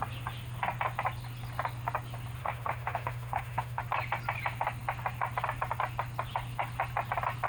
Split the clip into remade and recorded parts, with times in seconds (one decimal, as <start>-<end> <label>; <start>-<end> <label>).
0.0-2.4 recorded; 2.4-3.8 remade; 3.8-7.5 recorded